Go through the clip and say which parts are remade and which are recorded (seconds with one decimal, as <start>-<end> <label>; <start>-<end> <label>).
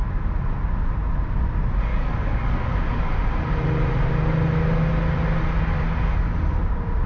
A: 0.0-1.9 recorded; 1.9-3.0 remade; 3.0-7.1 recorded